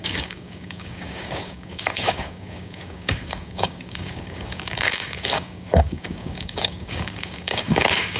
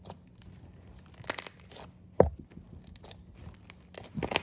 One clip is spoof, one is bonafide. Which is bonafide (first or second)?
second